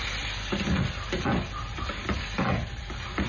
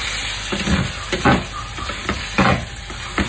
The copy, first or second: first